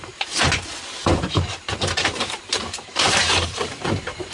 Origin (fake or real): fake